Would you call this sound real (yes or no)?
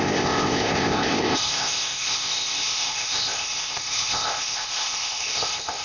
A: no